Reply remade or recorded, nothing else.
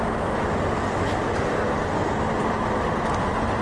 recorded